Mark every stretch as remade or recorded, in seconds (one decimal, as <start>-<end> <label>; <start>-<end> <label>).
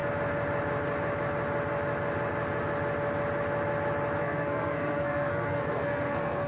0.0-4.2 recorded; 4.2-6.5 remade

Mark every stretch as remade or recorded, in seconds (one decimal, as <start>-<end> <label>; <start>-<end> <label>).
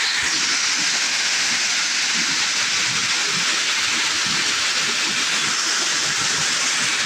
0.0-1.0 recorded; 1.0-1.6 remade; 1.6-7.1 recorded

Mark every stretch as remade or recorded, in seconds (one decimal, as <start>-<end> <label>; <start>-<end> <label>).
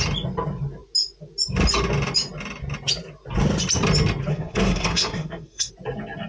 0.0-4.3 recorded; 4.3-5.7 remade; 5.7-6.3 recorded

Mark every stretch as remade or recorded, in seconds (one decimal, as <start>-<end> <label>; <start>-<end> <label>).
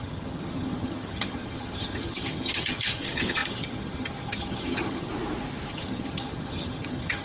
0.0-5.1 remade; 5.1-5.7 recorded; 5.7-7.2 remade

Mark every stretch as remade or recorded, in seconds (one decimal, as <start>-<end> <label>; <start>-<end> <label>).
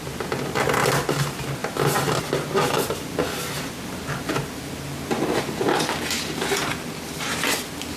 0.0-8.0 recorded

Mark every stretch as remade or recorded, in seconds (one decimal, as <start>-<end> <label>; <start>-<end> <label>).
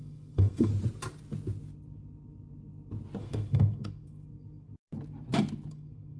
0.0-0.7 remade; 0.7-3.2 recorded; 3.2-4.7 remade; 4.7-5.7 recorded; 5.7-6.2 remade